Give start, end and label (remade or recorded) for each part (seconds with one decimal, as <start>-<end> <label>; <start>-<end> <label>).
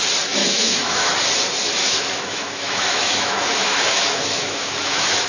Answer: 0.0-0.4 recorded; 0.4-1.1 remade; 1.1-1.8 recorded; 1.8-5.3 remade